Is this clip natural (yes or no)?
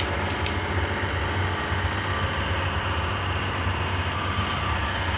yes